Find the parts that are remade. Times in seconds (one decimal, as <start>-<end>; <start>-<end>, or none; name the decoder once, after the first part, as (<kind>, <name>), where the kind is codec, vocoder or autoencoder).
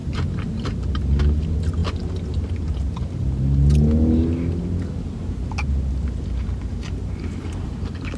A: 0.0-0.7 (vocoder, BigVGAN v2); 6.7-8.2